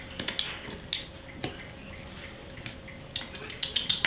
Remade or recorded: recorded